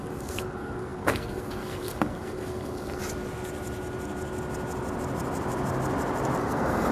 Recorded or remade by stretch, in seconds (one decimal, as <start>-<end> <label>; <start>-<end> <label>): 0.0-3.0 remade; 3.0-6.4 recorded; 6.4-6.9 remade